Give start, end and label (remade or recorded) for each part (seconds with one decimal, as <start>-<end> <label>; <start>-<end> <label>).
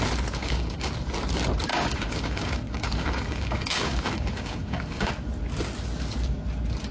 0.0-0.4 recorded; 0.4-0.9 remade; 0.9-1.7 recorded; 1.7-5.1 remade; 5.1-6.9 recorded